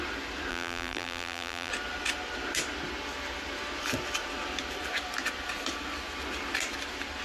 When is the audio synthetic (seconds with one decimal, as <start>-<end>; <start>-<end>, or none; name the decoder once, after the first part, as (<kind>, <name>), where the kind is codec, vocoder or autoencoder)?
0.5-1.7 (vocoder, BigVGAN v2)